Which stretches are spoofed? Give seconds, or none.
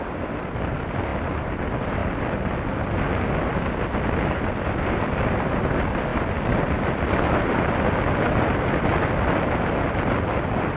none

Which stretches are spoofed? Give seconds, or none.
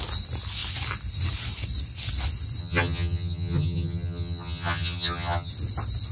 2.6-5.5 (vocoder, HiFi-GAN)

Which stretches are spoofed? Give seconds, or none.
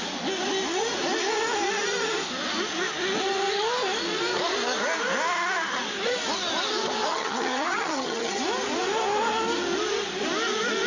7.1-8.4 (vocoder, HiFi-GAN)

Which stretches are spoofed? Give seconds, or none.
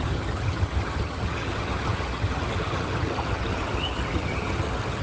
0.0-5.0 (vocoder, HiFi-GAN)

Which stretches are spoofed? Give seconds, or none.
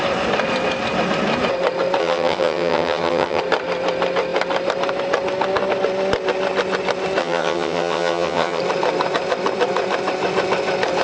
2.0-3.4 (vocoder, HiFi-GAN); 7.2-8.6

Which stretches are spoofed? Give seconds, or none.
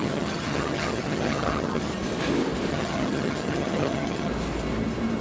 0.0-1.9 (vocoder, HiFi-GAN); 2.7-4.3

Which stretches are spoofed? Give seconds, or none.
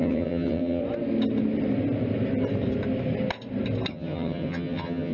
0.0-0.8 (vocoder, HiFi-GAN); 3.9-5.1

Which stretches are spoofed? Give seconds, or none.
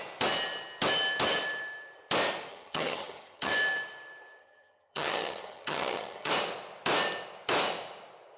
2.5-3.5 (vocoder, HiFi-GAN); 4.4-6.3